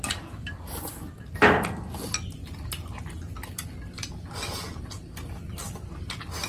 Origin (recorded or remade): recorded